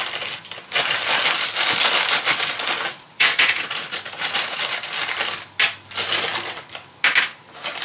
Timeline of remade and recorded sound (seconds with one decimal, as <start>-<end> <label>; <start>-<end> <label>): 0.0-2.9 recorded; 2.9-4.6 remade; 4.6-7.8 recorded